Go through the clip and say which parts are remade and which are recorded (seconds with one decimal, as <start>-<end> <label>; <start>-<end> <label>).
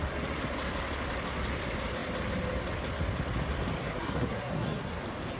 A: 0.0-3.8 recorded; 3.8-5.0 remade; 5.0-5.4 recorded